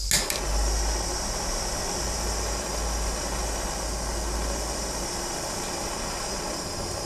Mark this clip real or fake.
real